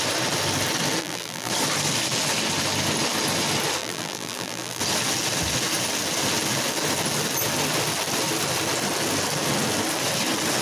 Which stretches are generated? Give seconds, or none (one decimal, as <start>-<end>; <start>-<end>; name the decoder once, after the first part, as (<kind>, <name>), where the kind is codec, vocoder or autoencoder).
1.0-1.5 (vocoder, BigVGAN v2); 3.8-4.8